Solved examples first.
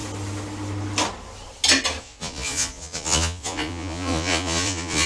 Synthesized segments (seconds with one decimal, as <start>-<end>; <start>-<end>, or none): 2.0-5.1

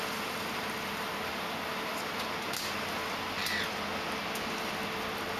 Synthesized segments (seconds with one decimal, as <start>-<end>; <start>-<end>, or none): none

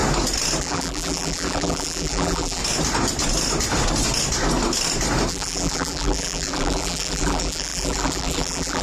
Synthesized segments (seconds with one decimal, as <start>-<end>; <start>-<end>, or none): 0.6-2.6; 5.3-8.8

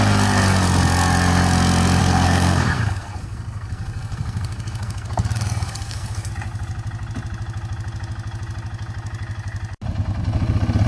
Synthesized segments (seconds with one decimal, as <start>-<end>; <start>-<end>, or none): 2.0-6.3